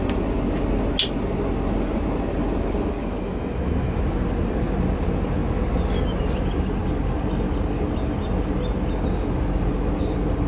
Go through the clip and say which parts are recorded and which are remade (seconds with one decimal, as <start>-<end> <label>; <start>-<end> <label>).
0.0-3.0 recorded; 3.0-4.0 remade; 4.0-10.5 recorded